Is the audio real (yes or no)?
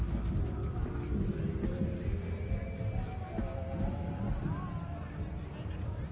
yes